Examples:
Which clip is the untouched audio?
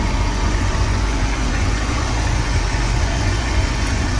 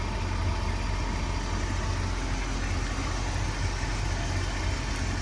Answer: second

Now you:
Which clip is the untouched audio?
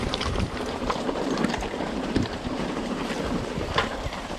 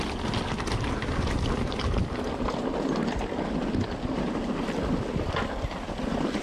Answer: second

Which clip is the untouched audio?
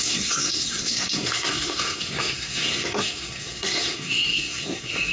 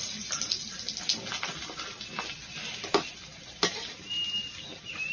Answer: second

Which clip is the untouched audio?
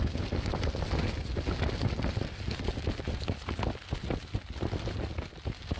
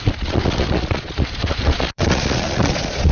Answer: first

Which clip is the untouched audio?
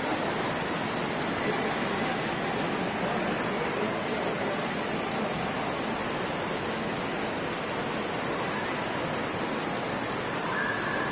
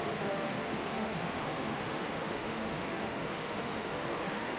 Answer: first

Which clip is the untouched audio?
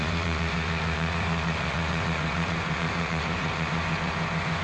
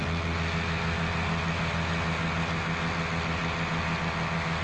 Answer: second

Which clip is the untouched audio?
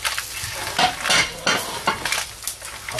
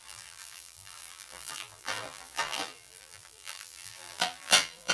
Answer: first